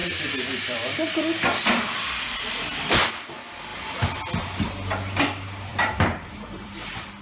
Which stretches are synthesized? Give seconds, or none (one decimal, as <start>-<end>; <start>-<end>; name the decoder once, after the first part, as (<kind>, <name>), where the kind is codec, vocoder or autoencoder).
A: 0.0-1.6 (vocoder, BigVGAN v2); 5.7-7.2